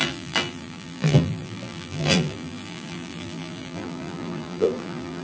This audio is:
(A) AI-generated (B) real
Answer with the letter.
A